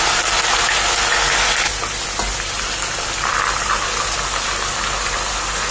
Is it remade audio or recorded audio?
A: recorded